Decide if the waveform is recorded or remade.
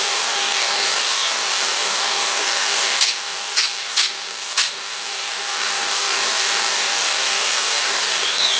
remade